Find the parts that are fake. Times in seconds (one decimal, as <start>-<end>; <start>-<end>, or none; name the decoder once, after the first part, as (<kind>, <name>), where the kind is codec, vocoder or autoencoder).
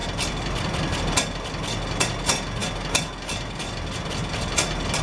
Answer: 0.0-1.0 (vocoder, BigVGAN v2)